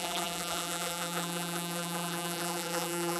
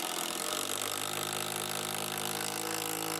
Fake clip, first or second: first